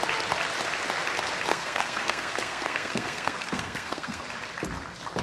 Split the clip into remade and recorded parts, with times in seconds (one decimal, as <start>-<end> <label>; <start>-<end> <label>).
0.0-1.5 recorded; 1.5-4.2 remade; 4.2-5.2 recorded